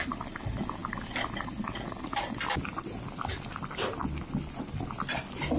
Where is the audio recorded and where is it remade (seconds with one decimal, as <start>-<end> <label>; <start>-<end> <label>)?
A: 0.0-5.6 recorded